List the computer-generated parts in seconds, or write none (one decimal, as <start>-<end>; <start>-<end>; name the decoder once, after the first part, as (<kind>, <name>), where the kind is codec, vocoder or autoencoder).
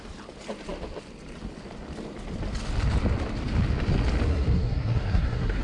4.3-5.6 (codec, SNAC)